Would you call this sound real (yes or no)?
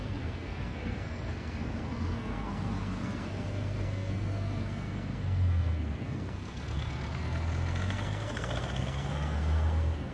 no